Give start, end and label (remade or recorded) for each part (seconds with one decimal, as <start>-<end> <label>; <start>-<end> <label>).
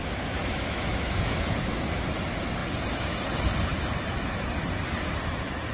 0.0-2.1 remade; 2.1-5.7 recorded